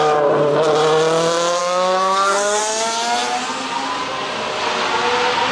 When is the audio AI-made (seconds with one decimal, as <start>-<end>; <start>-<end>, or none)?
1.6-2.6